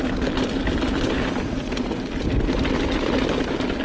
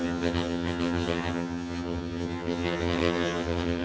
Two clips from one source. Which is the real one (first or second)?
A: first